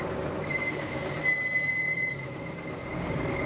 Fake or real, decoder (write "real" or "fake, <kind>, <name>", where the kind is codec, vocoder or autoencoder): fake, codec, DAC